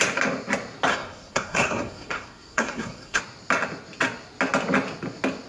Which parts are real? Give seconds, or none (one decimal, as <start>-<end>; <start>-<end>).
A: 0.0-0.9; 3.2-5.5